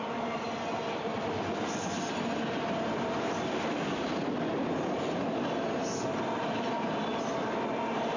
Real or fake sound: real